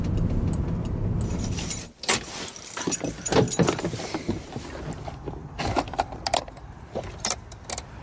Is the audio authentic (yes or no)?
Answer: yes